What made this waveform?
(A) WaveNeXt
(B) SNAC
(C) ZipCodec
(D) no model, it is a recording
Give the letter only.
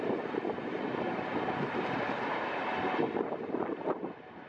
D